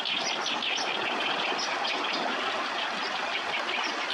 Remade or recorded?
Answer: remade